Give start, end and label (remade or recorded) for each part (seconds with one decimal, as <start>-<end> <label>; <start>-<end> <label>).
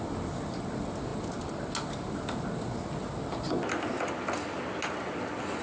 0.0-5.6 recorded